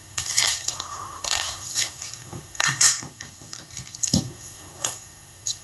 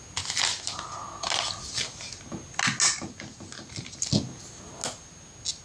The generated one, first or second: first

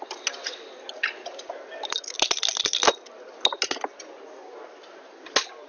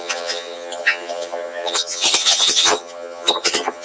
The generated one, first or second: second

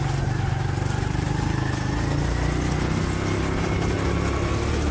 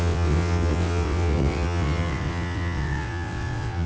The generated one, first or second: second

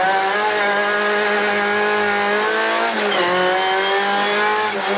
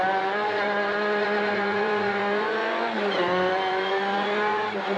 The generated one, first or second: second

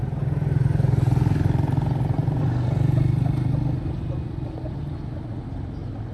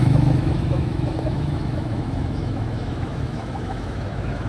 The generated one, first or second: second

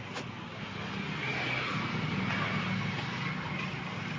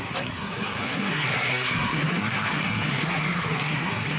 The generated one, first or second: second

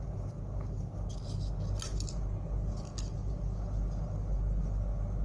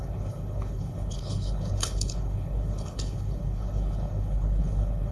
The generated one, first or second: second